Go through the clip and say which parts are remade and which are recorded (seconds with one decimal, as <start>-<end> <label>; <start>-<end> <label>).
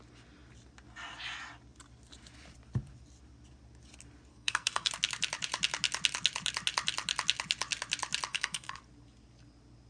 0.0-4.3 recorded; 4.3-4.9 remade; 4.9-8.3 recorded; 8.3-8.8 remade; 8.8-9.9 recorded